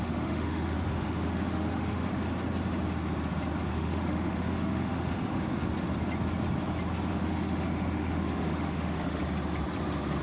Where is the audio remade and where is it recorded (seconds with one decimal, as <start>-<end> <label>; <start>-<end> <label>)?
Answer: 0.0-2.1 remade; 2.1-3.7 recorded; 3.7-5.6 remade; 5.6-7.1 recorded; 7.1-9.2 remade; 9.2-10.2 recorded